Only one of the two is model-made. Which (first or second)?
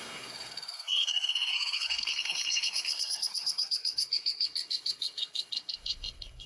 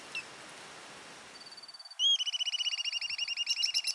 first